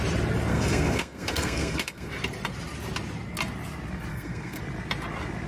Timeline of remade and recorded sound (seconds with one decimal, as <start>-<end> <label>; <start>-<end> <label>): 0.0-0.5 recorded; 0.5-2.1 remade; 2.1-4.1 recorded; 4.1-4.6 remade; 4.6-5.5 recorded